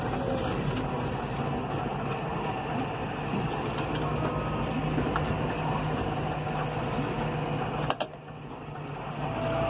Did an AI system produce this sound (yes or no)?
no